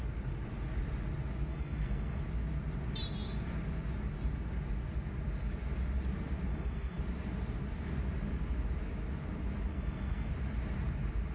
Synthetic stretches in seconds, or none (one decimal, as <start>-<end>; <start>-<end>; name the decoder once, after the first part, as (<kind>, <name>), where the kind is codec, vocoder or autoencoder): 1.5-2.2 (codec, SNAC); 6.5-7.0; 9.7-10.3